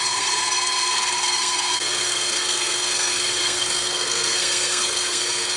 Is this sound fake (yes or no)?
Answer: yes